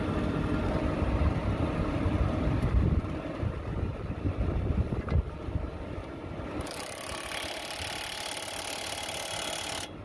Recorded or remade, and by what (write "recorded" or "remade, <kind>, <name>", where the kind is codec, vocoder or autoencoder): recorded